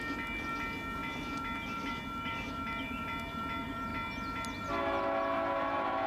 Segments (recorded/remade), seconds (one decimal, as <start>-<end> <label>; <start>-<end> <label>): 0.0-6.1 recorded